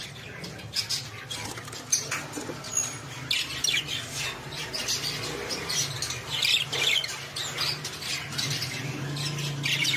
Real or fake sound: real